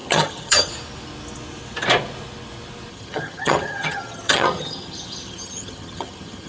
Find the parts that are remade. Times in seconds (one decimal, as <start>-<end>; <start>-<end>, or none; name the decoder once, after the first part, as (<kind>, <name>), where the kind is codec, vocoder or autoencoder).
0.0-0.7 (vocoder, HiFi-GAN); 2.9-6.5